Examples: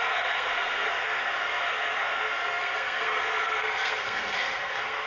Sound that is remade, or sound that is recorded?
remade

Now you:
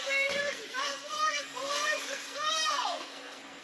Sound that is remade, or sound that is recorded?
remade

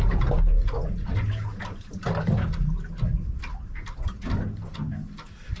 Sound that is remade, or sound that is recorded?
recorded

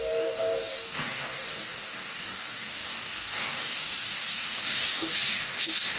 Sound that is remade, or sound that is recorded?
remade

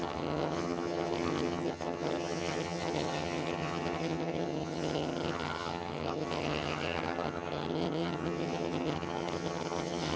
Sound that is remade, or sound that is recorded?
remade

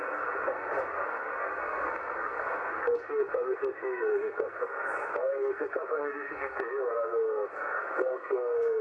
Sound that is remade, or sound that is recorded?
remade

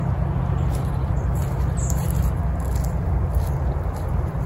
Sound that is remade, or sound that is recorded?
recorded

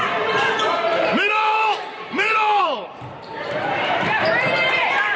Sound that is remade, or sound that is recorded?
remade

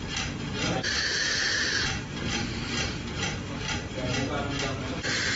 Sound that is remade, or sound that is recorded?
recorded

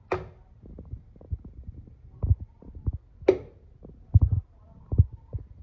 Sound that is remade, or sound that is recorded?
recorded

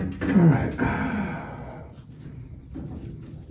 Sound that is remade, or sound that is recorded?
recorded